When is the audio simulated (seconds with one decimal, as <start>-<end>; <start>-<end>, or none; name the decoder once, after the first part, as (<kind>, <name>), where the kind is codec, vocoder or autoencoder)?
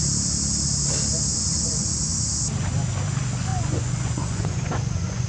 1.3-2.2 (vocoder, Vocos); 3.5-5.3